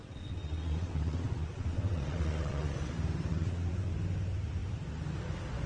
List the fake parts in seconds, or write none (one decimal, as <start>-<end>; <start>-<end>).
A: 0.0-2.9; 3.3-3.9